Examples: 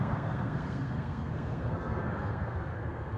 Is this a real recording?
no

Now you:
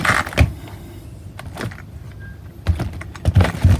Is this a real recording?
yes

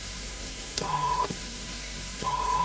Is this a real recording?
no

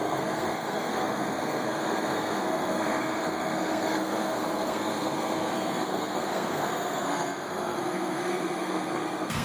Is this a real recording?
no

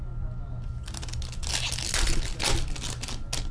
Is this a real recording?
yes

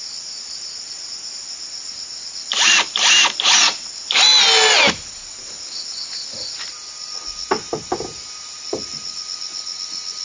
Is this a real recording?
yes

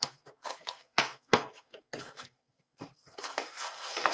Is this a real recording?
no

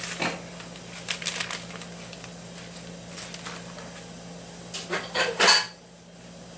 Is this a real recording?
yes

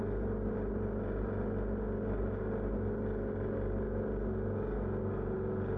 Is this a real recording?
yes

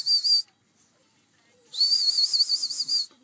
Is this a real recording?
yes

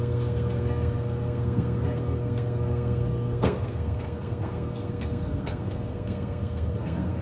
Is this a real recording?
no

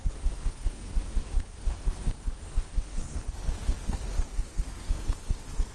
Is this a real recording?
no